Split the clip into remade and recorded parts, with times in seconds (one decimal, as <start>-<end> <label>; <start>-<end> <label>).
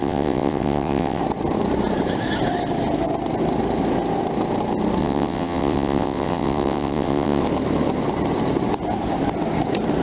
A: 0.0-1.2 remade; 1.2-5.0 recorded; 5.0-7.4 remade; 7.4-10.0 recorded